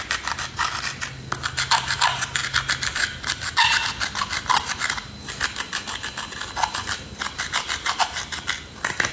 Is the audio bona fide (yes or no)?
yes